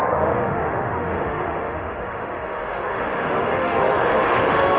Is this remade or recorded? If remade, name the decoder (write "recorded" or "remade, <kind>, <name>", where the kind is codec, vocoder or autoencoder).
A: remade, autoencoder, DAC-VAE